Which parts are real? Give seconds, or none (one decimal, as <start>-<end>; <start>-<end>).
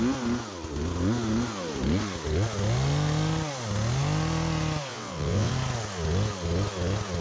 0.0-4.9; 5.5-7.2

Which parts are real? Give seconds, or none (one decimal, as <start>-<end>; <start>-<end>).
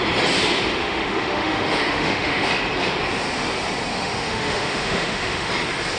0.0-0.8; 2.5-3.9; 5.5-6.0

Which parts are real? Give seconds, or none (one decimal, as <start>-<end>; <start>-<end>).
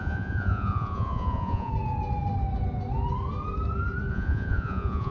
1.7-4.1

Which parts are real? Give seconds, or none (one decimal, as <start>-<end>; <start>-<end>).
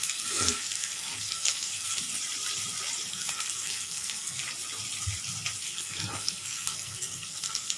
2.1-3.1; 4.4-5.6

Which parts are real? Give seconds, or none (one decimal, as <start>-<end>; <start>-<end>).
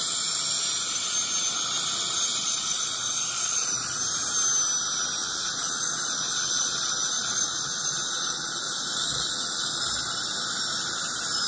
0.0-2.4; 4.0-5.2; 9.8-11.5